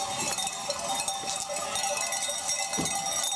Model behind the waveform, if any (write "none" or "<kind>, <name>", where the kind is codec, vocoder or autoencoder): none